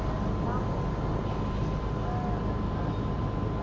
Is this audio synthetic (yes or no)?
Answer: no